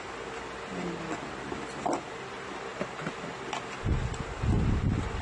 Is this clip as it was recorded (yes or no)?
yes